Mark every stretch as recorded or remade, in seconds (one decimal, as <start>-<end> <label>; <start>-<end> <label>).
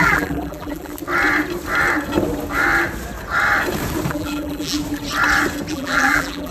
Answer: 0.0-0.9 remade; 0.9-4.1 recorded; 4.1-4.8 remade; 4.8-5.7 recorded; 5.7-6.5 remade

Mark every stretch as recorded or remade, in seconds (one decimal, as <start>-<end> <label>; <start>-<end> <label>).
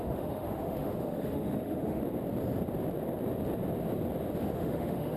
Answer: 0.0-2.0 remade; 2.0-4.4 recorded; 4.4-5.2 remade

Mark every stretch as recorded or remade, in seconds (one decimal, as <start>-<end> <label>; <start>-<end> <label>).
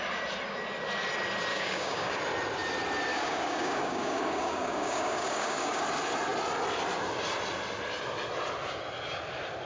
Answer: 0.0-1.5 recorded; 1.5-2.2 remade; 2.2-3.1 recorded; 3.1-5.8 remade; 5.8-9.7 recorded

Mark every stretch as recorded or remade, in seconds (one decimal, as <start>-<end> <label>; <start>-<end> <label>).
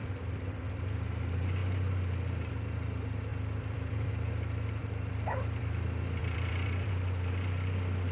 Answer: 0.0-0.8 remade; 0.8-3.3 recorded; 3.3-4.1 remade; 4.1-4.8 recorded; 4.8-6.9 remade; 6.9-8.1 recorded